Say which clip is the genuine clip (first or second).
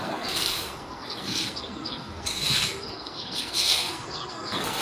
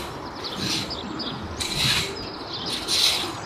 second